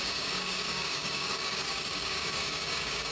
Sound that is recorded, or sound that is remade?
remade